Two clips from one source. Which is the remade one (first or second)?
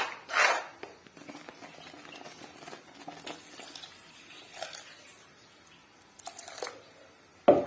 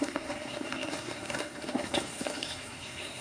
second